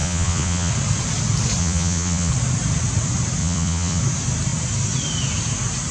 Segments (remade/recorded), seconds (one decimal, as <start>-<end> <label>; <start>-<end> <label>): 0.0-0.7 remade; 0.7-1.6 recorded; 1.6-2.3 remade; 2.3-3.4 recorded; 3.4-4.0 remade; 4.0-5.9 recorded